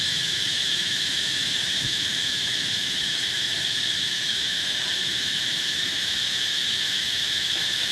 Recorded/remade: remade